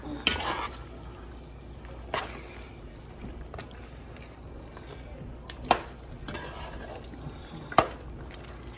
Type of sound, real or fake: real